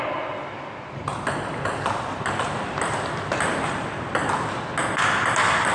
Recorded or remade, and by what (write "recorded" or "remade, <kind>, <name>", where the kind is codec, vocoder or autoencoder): recorded